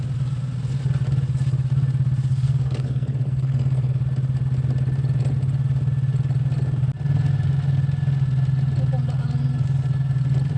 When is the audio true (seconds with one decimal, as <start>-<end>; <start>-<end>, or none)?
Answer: 0.0-2.3; 4.0-10.6